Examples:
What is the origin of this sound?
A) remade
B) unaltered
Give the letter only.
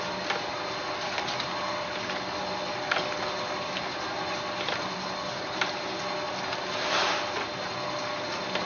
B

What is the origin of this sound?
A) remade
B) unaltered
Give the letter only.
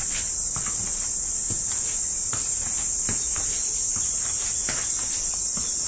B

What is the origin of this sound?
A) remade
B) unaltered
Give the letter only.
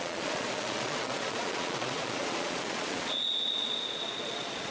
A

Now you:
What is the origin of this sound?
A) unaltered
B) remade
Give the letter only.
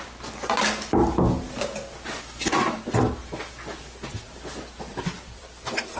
A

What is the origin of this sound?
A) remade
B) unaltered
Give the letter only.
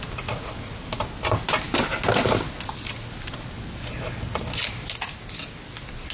B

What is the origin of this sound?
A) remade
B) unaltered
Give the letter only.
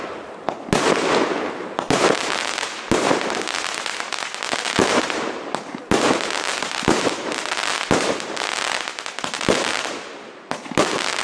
B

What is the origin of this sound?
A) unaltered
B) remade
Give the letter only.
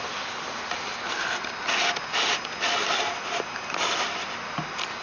A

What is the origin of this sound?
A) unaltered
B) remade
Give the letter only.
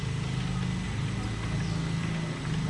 A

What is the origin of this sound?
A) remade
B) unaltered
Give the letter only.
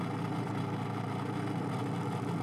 B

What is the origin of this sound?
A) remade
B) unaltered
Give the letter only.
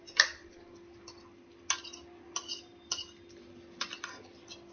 B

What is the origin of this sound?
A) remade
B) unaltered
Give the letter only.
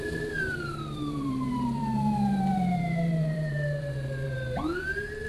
A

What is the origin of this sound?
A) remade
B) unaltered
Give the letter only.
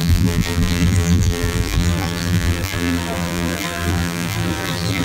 A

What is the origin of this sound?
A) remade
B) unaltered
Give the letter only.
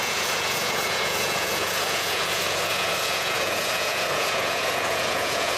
A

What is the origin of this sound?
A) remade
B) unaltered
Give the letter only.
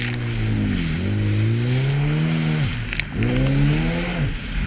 B